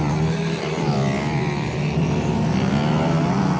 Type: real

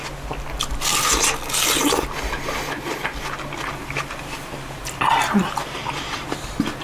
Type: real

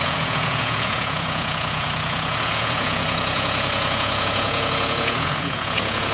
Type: fake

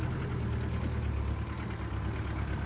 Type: real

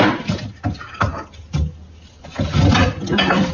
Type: real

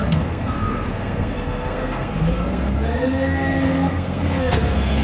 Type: fake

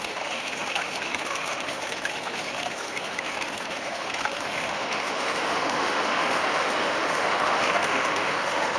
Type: fake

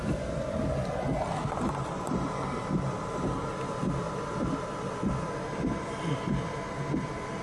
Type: real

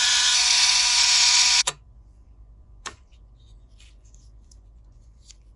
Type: fake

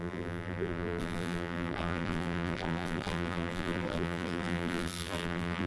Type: fake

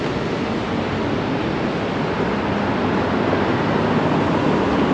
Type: real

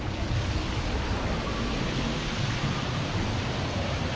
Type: real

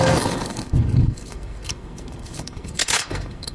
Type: fake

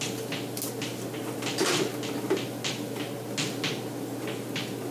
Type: real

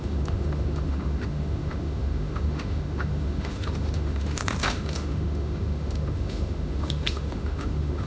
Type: fake